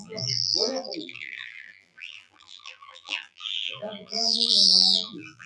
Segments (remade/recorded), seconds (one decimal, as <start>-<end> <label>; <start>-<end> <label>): 0.0-5.5 remade